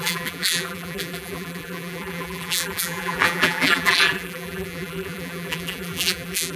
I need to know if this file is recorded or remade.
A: remade